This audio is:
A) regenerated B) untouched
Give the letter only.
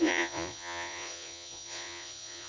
A